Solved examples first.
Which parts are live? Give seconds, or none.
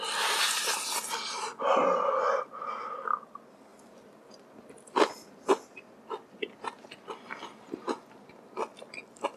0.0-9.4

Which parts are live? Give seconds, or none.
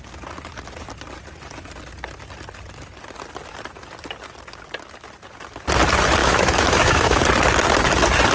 0.0-6.2; 7.2-8.3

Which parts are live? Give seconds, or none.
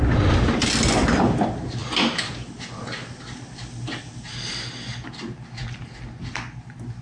0.0-7.0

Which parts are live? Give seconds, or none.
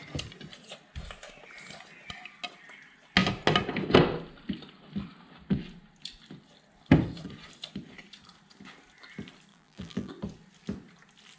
0.0-9.5; 10.1-11.4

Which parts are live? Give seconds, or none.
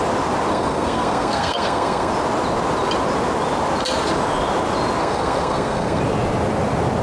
0.0-0.5; 2.1-5.0; 6.0-7.0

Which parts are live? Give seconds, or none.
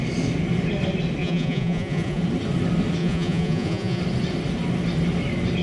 0.0-1.2; 2.2-3.0; 4.0-5.6